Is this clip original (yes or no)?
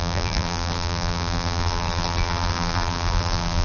no